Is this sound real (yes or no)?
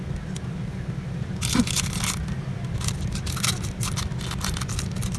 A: yes